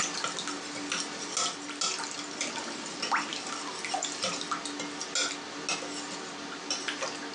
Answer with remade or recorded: recorded